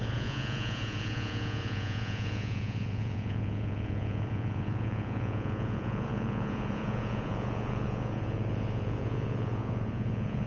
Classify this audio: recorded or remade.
remade